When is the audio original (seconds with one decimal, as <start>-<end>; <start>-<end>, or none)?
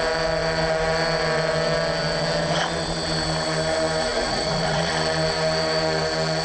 0.0-4.1; 4.9-6.4